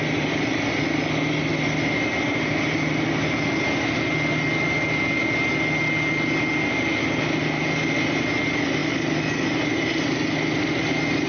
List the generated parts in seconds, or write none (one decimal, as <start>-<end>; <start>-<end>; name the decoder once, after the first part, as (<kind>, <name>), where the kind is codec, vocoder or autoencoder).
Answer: none